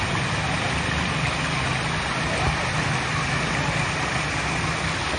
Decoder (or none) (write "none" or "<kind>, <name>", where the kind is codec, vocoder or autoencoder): none